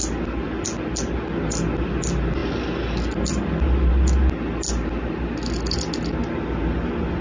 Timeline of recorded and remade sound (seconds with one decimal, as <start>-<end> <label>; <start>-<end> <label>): 0.0-7.2 recorded